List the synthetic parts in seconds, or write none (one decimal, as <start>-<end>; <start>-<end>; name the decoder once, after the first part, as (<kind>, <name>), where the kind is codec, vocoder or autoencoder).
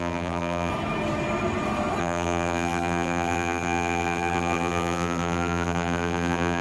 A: 0.0-0.7 (vocoder, BigVGAN v2); 2.0-6.6